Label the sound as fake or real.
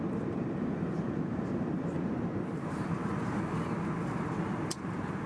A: fake